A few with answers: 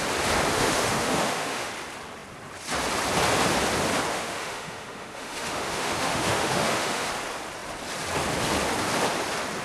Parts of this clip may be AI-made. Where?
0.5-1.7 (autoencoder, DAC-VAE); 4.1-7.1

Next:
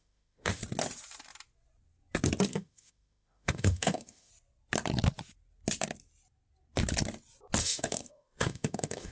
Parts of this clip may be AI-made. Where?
0.0-0.6 (autoencoder, DAC-VAE); 2.5-4.3; 7.6-9.1